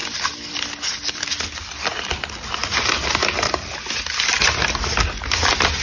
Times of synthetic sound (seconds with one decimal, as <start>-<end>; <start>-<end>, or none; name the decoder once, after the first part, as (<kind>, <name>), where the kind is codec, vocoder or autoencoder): 0.0-2.6 (vocoder, BigVGAN v2); 4.6-5.8